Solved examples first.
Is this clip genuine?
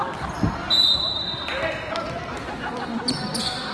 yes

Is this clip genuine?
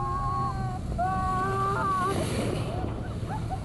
yes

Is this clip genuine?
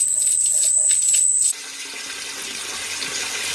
yes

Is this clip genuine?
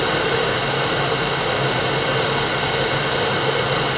yes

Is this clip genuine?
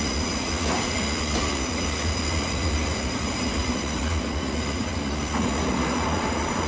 no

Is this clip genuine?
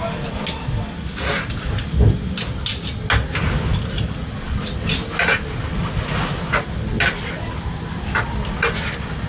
yes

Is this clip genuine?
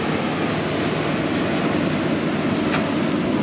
yes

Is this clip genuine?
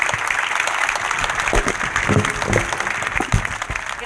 yes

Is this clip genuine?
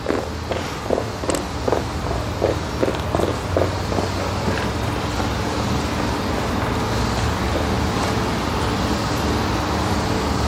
yes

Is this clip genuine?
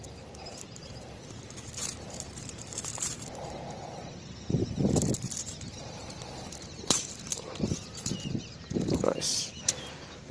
no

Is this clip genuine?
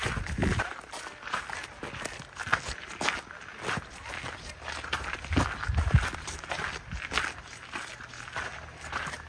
yes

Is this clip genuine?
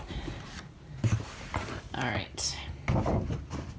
yes